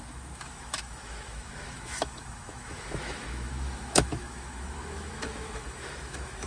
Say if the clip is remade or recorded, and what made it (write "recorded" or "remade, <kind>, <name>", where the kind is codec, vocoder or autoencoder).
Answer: remade, autoencoder, DAC-VAE